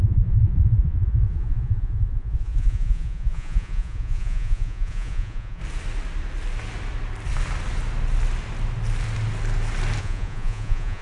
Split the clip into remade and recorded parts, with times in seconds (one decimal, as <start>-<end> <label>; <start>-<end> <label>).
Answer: 0.0-5.6 remade; 5.6-10.0 recorded; 10.0-11.0 remade